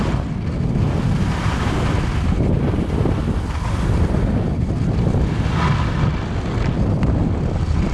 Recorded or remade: recorded